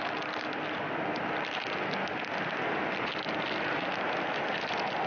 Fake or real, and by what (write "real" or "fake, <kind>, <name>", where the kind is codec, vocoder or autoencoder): real